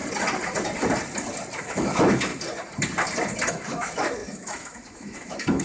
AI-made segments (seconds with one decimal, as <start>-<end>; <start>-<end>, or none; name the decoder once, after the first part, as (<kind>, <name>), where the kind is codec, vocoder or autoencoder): 1.6-2.3 (autoencoder, DAC-VAE); 3.5-5.6